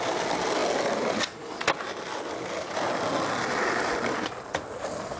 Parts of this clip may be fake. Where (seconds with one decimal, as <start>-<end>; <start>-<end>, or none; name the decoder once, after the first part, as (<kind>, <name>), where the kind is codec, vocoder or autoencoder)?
none